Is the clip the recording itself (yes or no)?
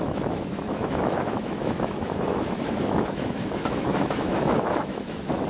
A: no